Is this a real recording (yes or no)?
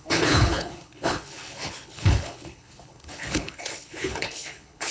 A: no